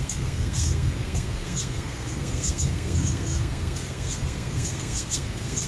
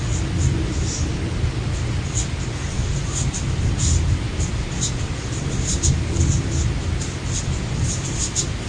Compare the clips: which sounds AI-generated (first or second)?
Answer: first